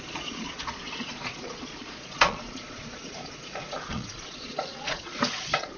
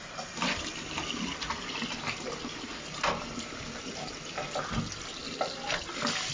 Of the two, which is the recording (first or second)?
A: second